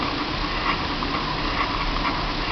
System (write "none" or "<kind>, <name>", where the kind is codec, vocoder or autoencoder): none